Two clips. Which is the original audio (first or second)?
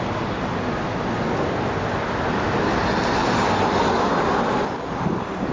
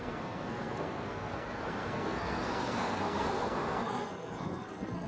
first